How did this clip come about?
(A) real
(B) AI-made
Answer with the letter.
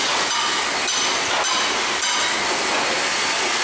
A